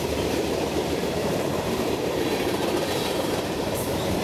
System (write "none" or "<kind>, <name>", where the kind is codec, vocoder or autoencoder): vocoder, BigVGAN v2